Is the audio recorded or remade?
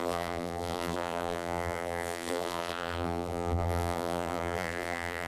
remade